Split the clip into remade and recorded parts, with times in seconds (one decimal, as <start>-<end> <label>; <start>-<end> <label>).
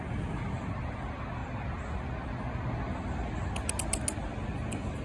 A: 0.0-5.0 recorded